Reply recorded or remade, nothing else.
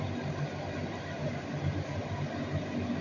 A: recorded